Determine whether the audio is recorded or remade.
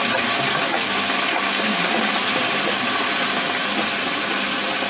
recorded